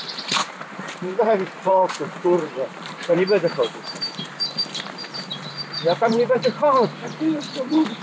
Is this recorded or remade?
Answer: remade